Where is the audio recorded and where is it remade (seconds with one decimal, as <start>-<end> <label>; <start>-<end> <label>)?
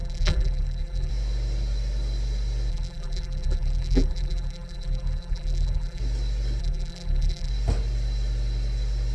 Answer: 0.0-1.1 remade; 1.1-2.7 recorded; 2.7-6.0 remade; 6.0-6.6 recorded; 6.6-7.5 remade; 7.5-9.1 recorded